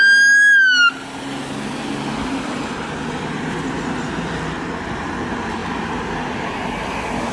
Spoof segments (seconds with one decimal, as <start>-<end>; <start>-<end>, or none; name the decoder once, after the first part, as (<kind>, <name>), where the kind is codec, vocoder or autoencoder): none